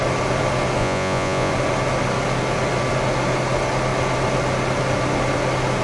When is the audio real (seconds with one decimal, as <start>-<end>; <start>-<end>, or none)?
0.0-0.8; 1.5-5.8